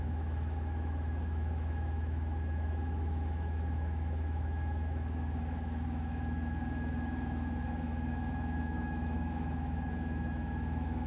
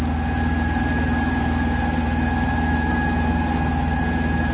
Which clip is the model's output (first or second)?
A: first